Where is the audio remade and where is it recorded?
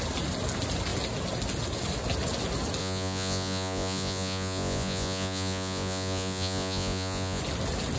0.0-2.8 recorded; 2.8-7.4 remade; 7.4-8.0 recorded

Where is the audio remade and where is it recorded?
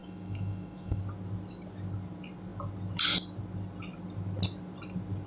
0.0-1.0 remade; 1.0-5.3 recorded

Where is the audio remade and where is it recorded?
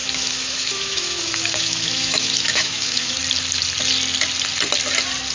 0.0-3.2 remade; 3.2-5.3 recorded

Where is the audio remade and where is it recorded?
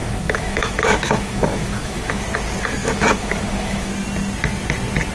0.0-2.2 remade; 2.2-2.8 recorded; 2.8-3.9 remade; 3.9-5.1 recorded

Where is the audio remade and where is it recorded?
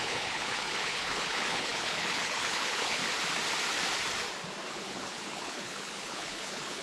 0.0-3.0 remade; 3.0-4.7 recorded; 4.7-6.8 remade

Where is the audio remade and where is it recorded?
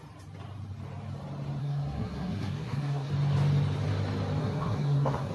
0.0-1.6 recorded; 1.6-3.1 remade; 3.1-4.4 recorded; 4.4-5.3 remade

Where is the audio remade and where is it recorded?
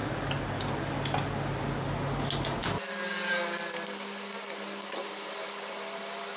0.0-6.4 recorded